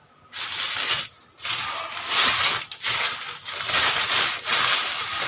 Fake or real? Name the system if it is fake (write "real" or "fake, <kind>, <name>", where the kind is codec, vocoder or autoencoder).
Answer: real